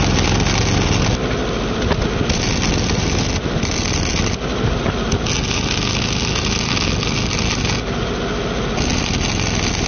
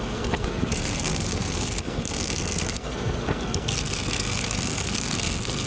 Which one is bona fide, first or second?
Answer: first